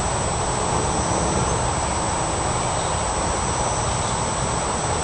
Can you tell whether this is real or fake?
real